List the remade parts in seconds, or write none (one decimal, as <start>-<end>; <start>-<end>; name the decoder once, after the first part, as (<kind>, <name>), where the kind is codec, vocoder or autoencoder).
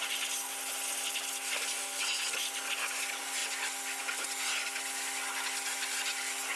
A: none